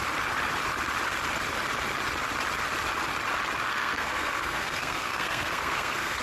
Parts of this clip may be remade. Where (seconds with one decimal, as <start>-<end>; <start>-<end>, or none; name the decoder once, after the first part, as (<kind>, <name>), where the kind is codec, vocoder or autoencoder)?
3.7-6.2 (codec, SNAC)